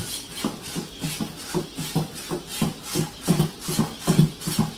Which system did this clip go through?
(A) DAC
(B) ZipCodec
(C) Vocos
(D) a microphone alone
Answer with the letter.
D